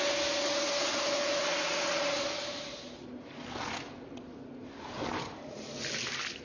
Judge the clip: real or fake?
real